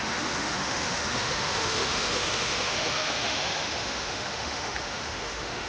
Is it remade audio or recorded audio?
remade